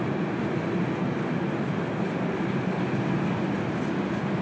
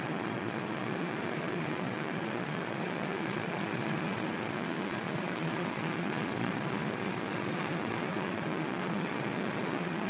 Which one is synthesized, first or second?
second